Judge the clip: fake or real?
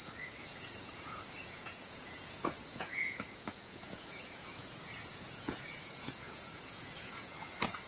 fake